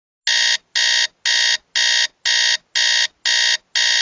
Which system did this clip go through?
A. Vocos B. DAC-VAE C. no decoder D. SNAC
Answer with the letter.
C